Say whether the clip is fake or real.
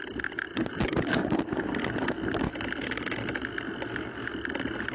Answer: real